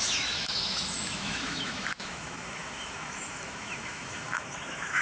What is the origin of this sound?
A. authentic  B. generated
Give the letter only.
B